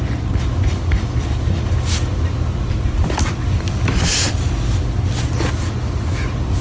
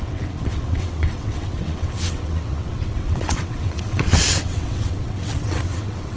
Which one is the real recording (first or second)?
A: first